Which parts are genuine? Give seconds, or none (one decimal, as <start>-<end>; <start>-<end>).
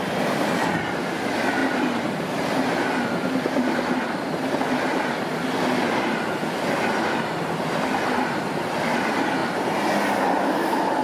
0.0-11.0